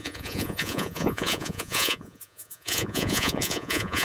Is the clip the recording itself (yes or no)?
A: no